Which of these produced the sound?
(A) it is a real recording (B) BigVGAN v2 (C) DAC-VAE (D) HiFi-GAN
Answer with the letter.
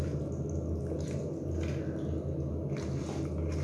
A